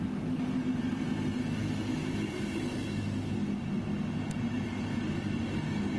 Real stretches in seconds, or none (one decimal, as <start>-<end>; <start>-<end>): 0.0-6.0